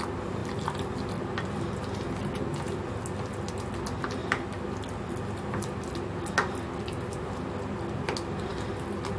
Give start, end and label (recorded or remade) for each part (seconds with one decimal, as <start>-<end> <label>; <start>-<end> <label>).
0.0-9.2 recorded